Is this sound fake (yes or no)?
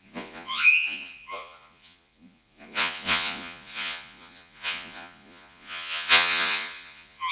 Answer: yes